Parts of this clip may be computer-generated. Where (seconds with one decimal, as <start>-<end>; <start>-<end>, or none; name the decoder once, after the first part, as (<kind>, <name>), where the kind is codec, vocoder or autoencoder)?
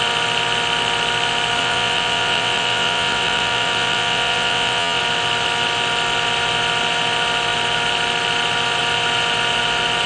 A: 1.6-5.0 (vocoder, WaveNeXt)